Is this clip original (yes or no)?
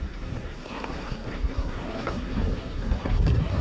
no